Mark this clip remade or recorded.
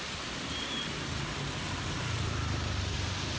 recorded